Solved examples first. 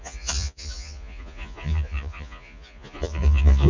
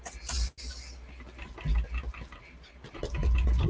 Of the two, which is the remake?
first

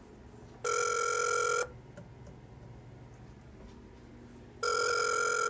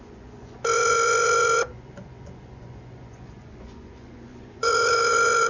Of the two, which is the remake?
second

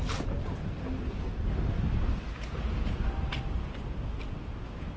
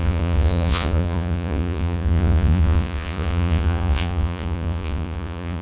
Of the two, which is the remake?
second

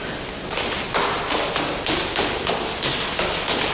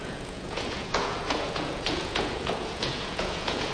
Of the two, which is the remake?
second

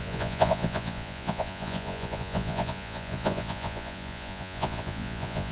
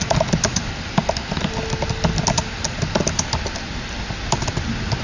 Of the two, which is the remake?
first